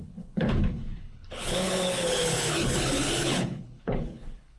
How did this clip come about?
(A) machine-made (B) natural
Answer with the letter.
A